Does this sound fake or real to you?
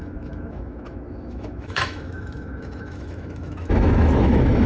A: fake